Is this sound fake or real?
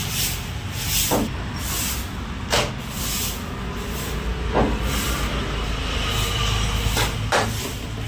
real